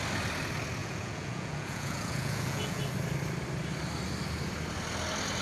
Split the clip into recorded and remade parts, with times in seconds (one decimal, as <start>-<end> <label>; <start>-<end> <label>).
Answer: 0.0-0.8 recorded; 0.8-2.8 remade; 2.8-5.4 recorded